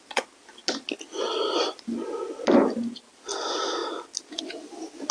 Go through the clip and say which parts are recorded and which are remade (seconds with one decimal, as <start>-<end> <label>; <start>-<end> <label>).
0.0-5.1 recorded